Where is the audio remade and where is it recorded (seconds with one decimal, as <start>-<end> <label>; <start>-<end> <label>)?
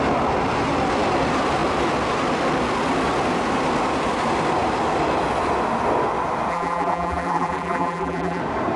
0.0-6.5 recorded; 6.5-8.4 remade; 8.4-8.8 recorded